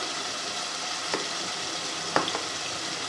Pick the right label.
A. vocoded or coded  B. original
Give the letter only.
A